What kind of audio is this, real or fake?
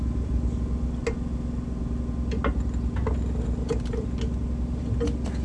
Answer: real